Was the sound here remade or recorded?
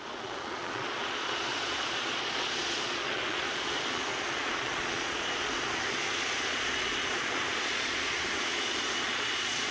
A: remade